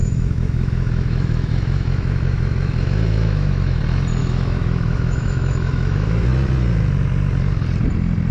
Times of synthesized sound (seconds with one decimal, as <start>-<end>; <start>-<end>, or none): 0.0-3.8; 4.2-6.3